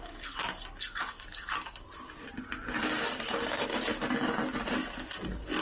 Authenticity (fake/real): real